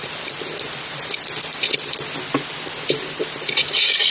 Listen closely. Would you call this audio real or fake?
real